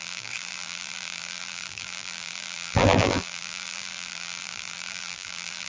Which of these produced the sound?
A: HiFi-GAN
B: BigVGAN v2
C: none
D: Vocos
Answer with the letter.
B